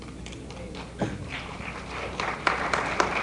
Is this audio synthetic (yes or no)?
no